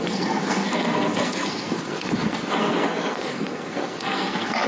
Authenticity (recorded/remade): remade